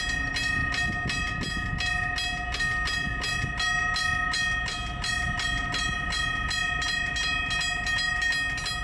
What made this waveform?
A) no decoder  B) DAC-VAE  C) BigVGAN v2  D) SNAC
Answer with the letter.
A